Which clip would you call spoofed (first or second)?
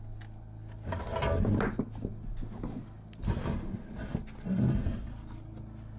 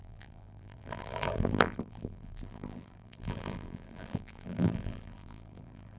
second